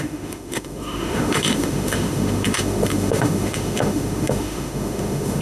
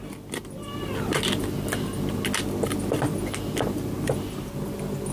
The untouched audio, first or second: second